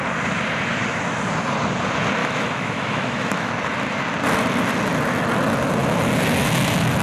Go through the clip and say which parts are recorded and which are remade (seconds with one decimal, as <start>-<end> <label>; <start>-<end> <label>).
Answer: 0.0-2.2 recorded; 2.2-3.5 remade; 3.5-7.0 recorded